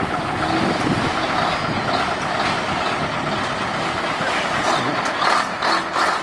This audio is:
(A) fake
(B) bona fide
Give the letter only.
B